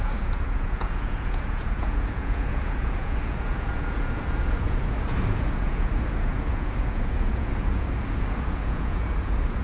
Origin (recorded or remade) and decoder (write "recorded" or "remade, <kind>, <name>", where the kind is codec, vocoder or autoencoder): remade, vocoder, Vocos